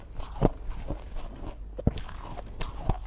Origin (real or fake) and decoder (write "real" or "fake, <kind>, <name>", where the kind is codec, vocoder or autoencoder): real